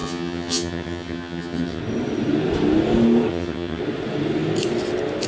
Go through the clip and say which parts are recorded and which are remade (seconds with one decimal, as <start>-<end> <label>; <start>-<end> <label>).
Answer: 0.0-1.8 remade; 1.8-3.3 recorded; 3.3-3.8 remade; 3.8-5.3 recorded

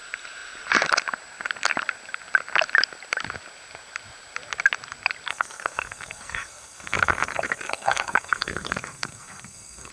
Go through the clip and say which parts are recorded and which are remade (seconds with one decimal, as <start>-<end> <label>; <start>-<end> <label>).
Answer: 0.0-5.3 recorded; 5.3-9.9 remade